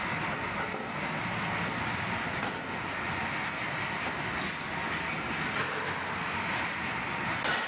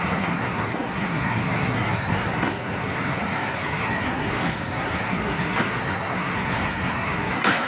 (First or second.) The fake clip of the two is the second